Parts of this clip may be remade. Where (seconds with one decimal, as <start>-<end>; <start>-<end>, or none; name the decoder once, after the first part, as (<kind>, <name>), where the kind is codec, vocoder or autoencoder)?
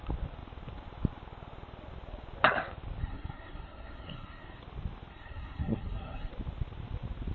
3.0-4.6 (codec, SNAC); 5.1-6.3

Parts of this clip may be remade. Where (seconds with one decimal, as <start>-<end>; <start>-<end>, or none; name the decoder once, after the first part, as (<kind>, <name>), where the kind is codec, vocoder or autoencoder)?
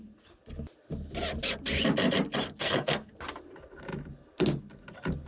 2.6-3.1 (codec, SNAC)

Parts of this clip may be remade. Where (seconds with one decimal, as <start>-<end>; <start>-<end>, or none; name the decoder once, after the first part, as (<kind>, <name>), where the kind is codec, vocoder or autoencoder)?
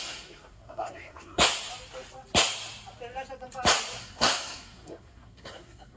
0.0-1.4 (codec, SNAC); 4.0-6.0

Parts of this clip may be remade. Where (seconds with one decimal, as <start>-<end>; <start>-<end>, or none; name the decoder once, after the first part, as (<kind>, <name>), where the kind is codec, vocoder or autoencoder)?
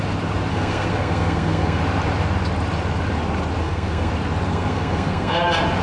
0.5-1.8 (codec, SNAC); 3.6-4.1; 4.5-5.3